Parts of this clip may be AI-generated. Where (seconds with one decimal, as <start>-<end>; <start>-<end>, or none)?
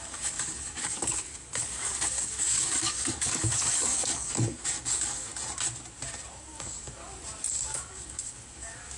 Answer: 0.0-5.3; 6.4-7.0; 7.5-9.0